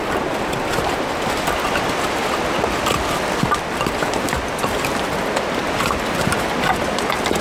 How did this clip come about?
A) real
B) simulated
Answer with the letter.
A